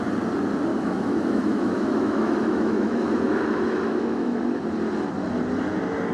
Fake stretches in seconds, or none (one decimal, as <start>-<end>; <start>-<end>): 0.7-4.4